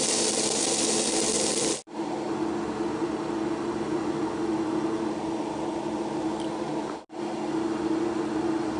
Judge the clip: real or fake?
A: real